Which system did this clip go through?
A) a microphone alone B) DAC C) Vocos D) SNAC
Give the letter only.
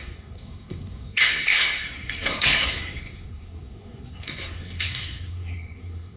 D